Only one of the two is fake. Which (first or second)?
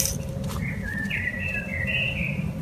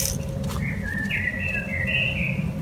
first